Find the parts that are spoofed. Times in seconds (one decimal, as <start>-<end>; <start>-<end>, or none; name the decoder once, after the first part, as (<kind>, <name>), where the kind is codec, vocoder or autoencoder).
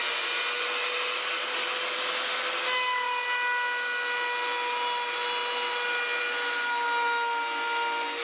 none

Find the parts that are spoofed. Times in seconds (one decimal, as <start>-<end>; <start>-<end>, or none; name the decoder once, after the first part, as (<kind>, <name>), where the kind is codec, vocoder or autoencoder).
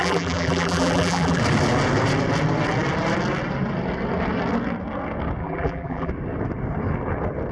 0.0-1.4 (vocoder, BigVGAN v2); 5.4-6.1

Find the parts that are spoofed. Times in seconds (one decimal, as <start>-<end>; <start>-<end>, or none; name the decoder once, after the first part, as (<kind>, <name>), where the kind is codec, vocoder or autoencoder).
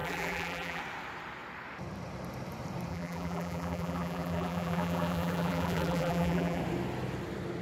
0.0-0.8 (vocoder, BigVGAN v2); 2.9-6.6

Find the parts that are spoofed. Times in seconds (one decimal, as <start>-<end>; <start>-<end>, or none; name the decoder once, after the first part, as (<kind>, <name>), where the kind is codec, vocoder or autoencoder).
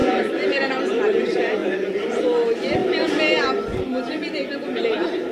none